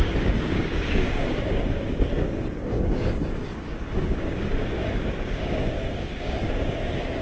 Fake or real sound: fake